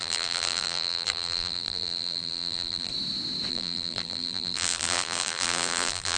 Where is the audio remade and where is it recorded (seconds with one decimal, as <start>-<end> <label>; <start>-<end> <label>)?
0.0-2.9 remade; 2.9-3.5 recorded; 3.5-6.2 remade